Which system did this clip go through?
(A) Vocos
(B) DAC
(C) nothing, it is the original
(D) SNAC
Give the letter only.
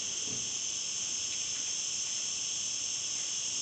C